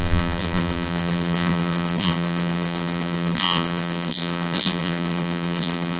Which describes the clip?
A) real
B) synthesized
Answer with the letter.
B